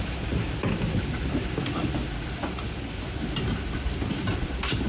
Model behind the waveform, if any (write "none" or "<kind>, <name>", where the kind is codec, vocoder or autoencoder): none